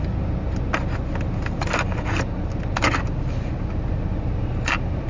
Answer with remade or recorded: recorded